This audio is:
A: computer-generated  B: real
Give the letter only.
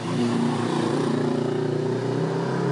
B